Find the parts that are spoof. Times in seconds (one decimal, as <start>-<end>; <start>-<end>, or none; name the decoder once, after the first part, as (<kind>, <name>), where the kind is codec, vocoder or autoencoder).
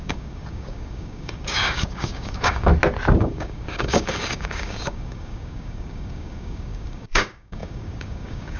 0.0-2.7 (codec, DAC); 3.2-8.6